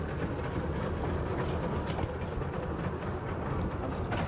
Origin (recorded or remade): recorded